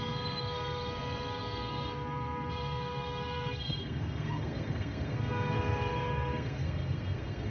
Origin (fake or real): fake